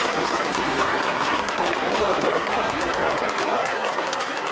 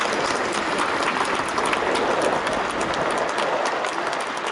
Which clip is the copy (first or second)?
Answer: first